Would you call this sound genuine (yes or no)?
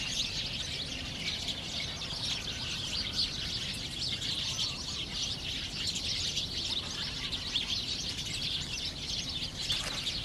yes